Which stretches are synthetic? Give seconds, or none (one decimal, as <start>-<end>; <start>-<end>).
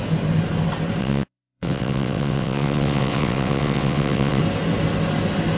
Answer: 1.0-4.4